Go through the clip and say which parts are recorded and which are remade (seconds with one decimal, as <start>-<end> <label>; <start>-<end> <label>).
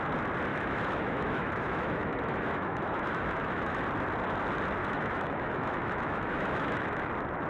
0.0-0.5 recorded; 0.5-3.8 remade; 3.8-4.8 recorded; 4.8-7.1 remade; 7.1-7.5 recorded